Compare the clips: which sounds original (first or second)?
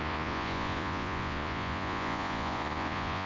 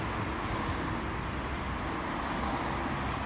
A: second